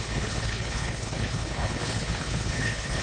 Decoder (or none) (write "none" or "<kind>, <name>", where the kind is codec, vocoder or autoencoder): codec, HILCodec